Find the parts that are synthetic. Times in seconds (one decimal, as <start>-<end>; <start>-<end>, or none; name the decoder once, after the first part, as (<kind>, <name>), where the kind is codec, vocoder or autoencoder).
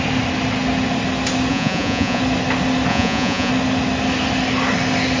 1.5-2.2 (vocoder, Vocos); 2.9-3.5